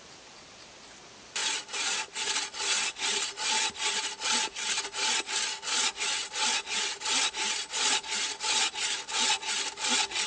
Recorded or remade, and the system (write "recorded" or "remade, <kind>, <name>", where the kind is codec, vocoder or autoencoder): recorded